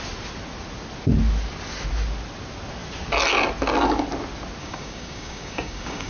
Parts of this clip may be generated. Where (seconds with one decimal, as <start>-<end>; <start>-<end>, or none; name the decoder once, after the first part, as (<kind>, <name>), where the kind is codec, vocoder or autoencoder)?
4.6-6.1 (codec, DAC)